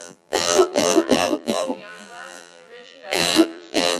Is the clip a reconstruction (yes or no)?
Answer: yes